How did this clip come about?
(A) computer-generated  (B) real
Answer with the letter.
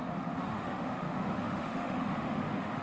A